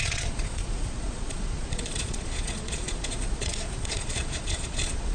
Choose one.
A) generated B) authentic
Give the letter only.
A